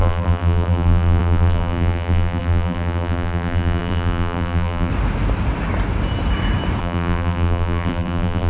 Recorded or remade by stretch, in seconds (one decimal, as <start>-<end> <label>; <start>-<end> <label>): 0.0-4.9 remade; 4.9-6.8 recorded; 6.8-8.5 remade